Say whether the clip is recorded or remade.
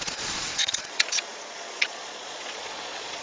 remade